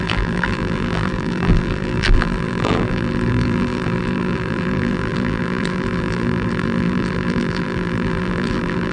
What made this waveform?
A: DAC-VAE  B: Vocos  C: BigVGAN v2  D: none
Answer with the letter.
C